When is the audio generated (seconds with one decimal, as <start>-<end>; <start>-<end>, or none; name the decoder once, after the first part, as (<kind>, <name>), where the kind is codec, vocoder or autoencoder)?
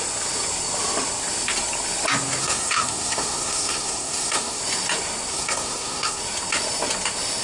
2.4-4.6 (codec, SNAC); 5.3-6.2